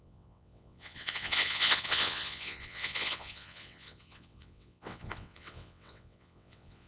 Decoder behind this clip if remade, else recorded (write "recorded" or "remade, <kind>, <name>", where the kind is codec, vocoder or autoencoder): remade, vocoder, WaveNeXt